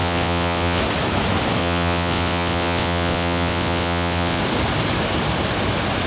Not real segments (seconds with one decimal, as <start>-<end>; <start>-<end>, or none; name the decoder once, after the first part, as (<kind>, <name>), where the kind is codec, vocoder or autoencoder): 0.0-0.8 (vocoder, WaveNeXt); 1.6-4.4